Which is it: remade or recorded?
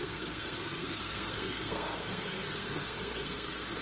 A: remade